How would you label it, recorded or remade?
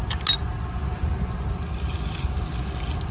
recorded